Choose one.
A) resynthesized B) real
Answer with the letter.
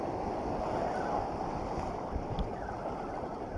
B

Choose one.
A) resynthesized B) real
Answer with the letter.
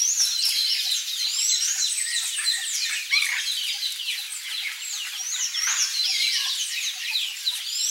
B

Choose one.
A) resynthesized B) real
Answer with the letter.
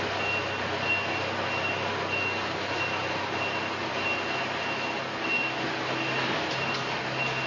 B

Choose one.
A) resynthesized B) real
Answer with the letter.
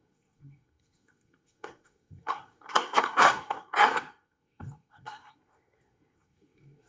A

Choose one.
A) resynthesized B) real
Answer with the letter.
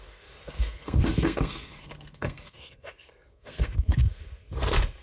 A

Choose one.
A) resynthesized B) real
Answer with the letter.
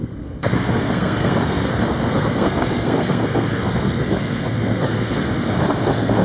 A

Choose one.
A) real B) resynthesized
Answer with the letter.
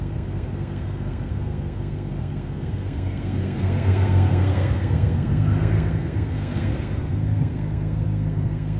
B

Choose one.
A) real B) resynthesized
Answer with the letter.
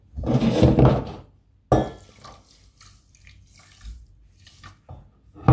A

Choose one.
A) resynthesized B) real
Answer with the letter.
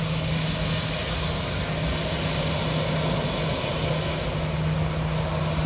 B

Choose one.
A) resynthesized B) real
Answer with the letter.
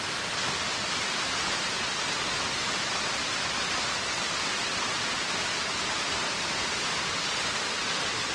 B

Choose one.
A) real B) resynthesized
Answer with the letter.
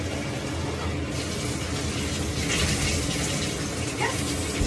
A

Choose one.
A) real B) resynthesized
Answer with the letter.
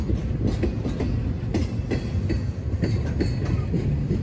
A